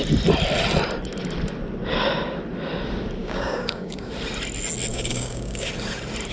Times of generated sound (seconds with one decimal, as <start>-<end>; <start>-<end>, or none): 3.2-4.1; 4.9-5.7